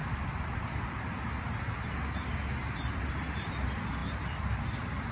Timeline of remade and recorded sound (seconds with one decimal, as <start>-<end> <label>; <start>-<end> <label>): 0.0-4.0 recorded; 4.0-5.1 remade